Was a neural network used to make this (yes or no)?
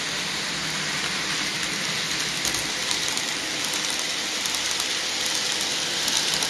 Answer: no